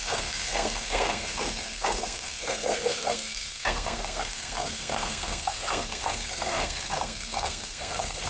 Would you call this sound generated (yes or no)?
yes